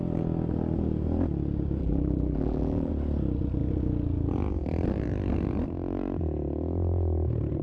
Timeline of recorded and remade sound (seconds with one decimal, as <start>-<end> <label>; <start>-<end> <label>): 0.0-1.8 recorded; 1.8-2.9 remade; 2.9-7.6 recorded